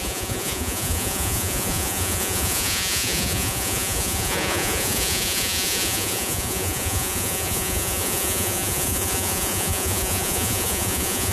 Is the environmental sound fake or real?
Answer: fake